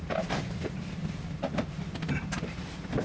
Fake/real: fake